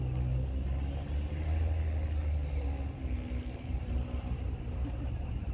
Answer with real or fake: real